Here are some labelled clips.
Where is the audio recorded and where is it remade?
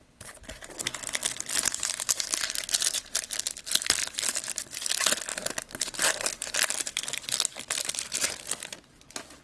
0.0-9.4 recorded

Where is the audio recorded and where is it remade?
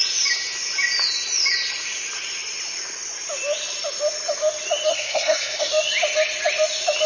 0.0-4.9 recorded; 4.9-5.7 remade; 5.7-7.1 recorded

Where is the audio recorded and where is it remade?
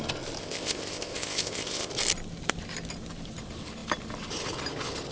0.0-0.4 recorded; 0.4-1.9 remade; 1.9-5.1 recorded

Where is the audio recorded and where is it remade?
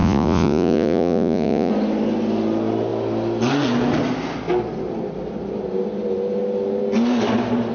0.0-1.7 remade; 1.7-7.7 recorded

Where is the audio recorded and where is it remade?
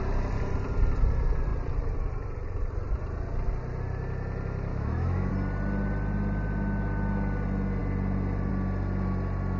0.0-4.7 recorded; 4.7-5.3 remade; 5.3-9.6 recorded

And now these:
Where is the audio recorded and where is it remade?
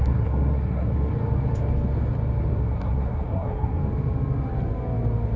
0.0-1.1 remade; 1.1-2.6 recorded; 2.6-3.8 remade; 3.8-5.4 recorded